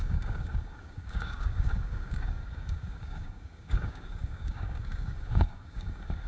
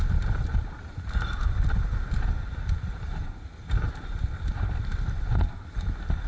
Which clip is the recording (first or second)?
second